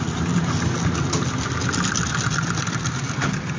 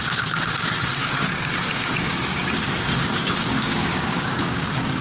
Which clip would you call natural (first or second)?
first